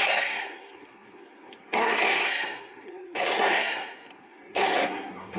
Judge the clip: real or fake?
fake